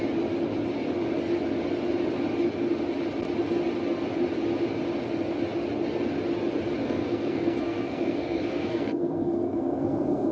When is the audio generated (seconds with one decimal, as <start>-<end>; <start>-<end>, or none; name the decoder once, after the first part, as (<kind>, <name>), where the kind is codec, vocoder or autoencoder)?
6.8-10.3 (codec, SNAC)

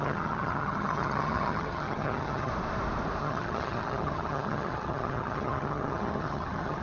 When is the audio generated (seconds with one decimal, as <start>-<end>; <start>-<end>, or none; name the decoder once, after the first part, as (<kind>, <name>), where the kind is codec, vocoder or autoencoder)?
0.0-2.5 (vocoder, HiFi-GAN); 3.2-6.8

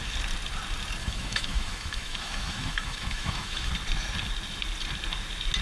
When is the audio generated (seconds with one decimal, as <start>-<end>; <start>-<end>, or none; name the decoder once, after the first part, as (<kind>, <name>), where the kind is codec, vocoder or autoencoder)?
1.0-3.7 (autoencoder, DAC-VAE)

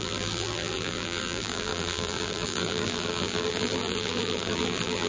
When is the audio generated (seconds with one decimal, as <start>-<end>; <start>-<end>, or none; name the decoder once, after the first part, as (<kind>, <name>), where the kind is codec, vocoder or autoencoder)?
0.0-5.1 (vocoder, BigVGAN v2)

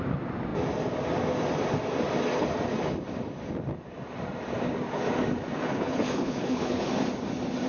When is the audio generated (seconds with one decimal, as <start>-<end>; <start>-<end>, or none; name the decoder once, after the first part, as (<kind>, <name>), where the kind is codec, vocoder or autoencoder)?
5.7-6.9 (codec, HILCodec)

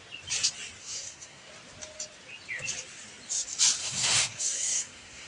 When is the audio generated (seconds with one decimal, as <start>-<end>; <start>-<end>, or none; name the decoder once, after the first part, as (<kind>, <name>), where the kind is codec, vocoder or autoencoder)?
0.8-1.5 (codec, SNAC); 3.8-5.3

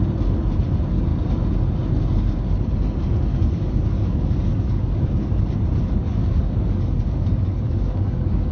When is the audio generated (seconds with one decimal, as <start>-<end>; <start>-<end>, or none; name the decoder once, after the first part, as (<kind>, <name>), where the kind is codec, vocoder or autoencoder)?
3.3-5.1 (codec, DAC); 6.1-8.5

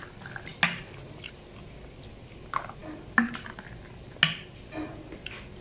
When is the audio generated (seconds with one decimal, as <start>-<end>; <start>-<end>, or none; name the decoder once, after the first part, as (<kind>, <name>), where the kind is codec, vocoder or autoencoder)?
none